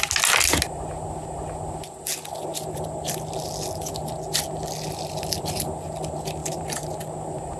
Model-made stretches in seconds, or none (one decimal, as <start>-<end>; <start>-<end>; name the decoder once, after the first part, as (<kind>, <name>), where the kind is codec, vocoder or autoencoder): 6.4-7.0 (vocoder, BigVGAN v2)